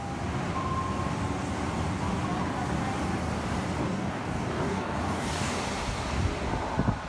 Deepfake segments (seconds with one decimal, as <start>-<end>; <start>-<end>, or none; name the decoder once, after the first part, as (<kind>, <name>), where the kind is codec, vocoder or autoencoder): 3.8-5.5 (codec, DAC)